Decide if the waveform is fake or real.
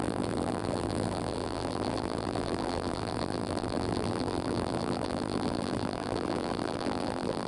fake